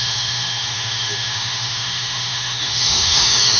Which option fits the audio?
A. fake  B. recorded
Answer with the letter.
A